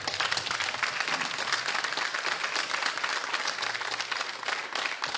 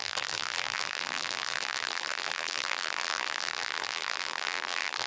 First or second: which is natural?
first